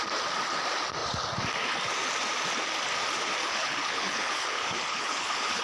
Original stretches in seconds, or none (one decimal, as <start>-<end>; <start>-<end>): 0.0-3.4